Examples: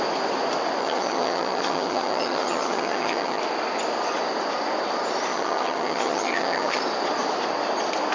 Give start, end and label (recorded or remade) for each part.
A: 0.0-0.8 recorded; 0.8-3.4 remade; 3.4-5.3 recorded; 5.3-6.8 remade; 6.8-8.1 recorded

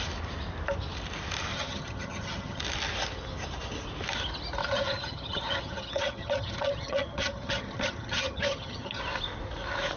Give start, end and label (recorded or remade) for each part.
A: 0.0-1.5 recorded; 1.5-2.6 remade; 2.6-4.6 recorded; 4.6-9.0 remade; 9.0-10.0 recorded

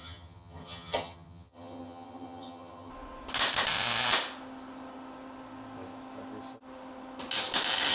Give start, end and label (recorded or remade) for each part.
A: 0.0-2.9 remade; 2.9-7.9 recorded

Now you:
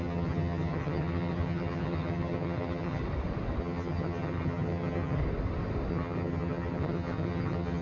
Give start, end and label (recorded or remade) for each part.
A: 0.0-3.0 remade; 3.0-3.6 recorded; 3.6-5.2 remade; 5.2-5.9 recorded; 5.9-7.8 remade

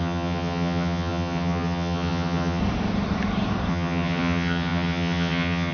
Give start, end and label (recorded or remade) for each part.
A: 0.0-2.6 remade; 2.6-3.7 recorded; 3.7-5.7 remade

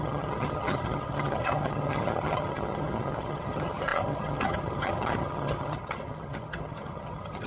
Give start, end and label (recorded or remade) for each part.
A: 0.0-7.5 remade